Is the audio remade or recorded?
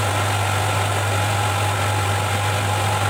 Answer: recorded